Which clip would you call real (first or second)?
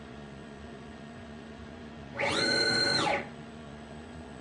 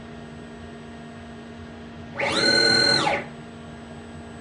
second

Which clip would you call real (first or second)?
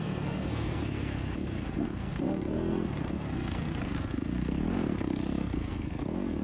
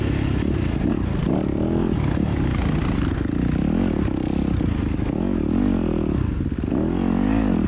second